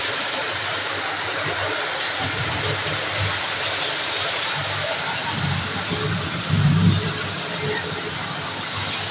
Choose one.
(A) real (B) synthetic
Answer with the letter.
A